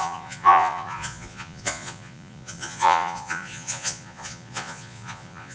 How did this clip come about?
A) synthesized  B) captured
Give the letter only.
A